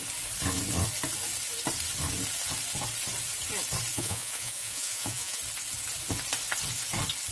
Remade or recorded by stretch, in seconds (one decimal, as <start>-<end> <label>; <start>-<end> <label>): 0.0-3.9 recorded; 3.9-5.4 remade; 5.4-7.3 recorded